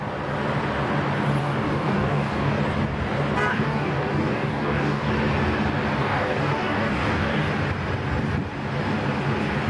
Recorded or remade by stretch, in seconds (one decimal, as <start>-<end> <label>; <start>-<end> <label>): 0.0-1.4 recorded; 1.4-2.6 remade; 2.6-3.5 recorded; 3.5-5.1 remade; 5.1-6.0 recorded; 6.0-7.5 remade; 7.5-9.7 recorded